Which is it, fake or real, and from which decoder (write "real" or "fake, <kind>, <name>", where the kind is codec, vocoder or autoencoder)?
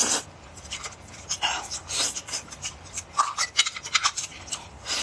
fake, vocoder, BigVGAN v2